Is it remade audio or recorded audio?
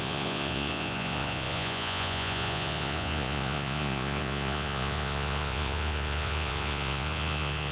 remade